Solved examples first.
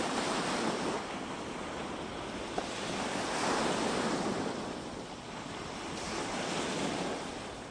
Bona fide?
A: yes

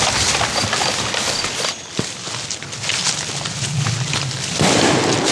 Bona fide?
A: yes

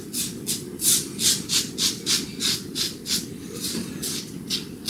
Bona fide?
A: yes